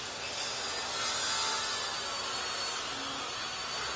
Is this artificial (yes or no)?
no